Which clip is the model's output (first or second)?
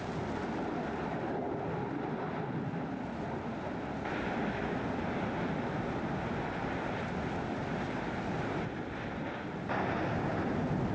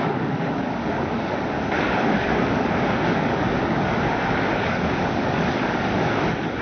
second